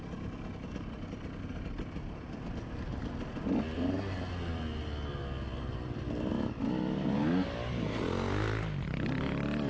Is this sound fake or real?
real